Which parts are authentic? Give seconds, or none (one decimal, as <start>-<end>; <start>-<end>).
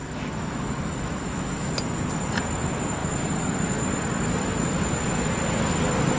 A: 1.7-6.2